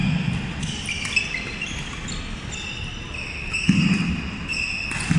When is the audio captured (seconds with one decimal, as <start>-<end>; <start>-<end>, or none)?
0.0-5.2